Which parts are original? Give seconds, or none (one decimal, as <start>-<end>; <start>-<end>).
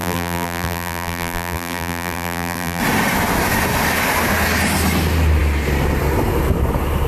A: 2.8-7.1